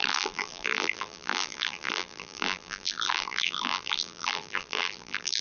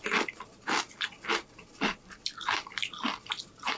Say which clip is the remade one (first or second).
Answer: first